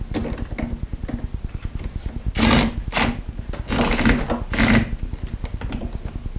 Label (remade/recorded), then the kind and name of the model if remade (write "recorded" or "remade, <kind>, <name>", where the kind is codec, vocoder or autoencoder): recorded